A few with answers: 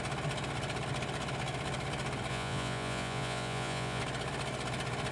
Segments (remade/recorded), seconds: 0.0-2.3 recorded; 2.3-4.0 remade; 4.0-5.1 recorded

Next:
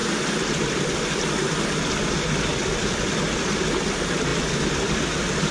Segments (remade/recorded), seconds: 0.0-5.5 recorded

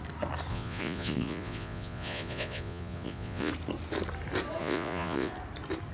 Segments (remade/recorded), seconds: 0.0-0.5 recorded; 0.5-3.5 remade; 3.5-4.6 recorded; 4.6-5.3 remade; 5.3-5.9 recorded

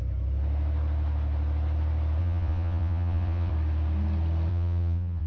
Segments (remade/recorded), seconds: 0.0-2.2 recorded; 2.2-3.5 remade; 3.5-4.5 recorded; 4.5-5.3 remade

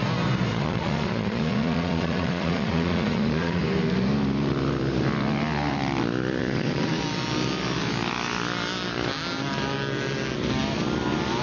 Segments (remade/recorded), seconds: 0.0-0.5 recorded; 0.5-3.6 remade; 3.6-6.4 recorded; 6.4-7.0 remade; 7.0-11.4 recorded

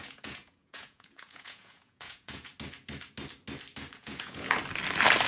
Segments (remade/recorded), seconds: 0.0-2.5 remade; 2.5-3.9 recorded; 3.9-4.6 remade; 4.6-5.3 recorded

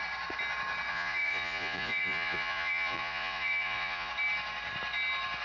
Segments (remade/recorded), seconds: 0.0-0.9 recorded; 0.9-4.1 remade; 4.1-5.4 recorded